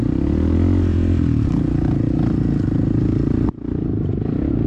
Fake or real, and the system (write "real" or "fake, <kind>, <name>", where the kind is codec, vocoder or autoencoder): real